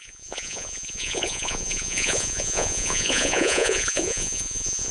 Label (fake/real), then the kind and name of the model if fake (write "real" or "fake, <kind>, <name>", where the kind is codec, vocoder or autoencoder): fake, vocoder, Vocos